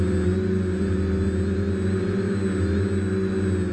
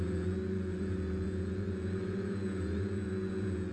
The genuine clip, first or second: first